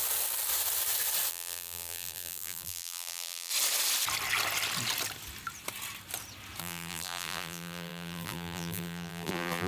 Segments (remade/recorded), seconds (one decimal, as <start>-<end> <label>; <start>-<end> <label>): 0.0-1.3 recorded; 1.3-3.5 remade; 3.5-6.6 recorded; 6.6-9.7 remade